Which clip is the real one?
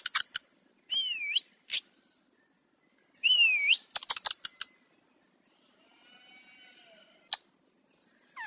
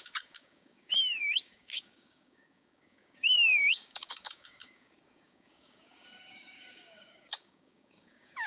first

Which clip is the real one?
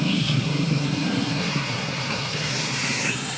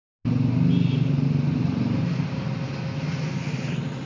second